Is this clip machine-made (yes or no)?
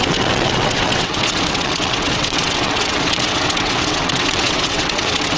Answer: yes